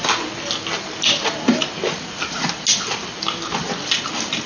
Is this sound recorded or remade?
recorded